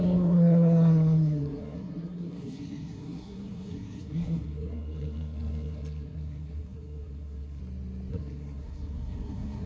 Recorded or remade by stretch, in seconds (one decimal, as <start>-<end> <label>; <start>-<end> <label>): 0.0-7.6 remade; 7.6-8.1 recorded; 8.1-9.7 remade